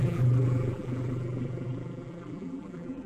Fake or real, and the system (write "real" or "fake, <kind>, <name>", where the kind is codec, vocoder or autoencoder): fake, vocoder, BigVGAN v2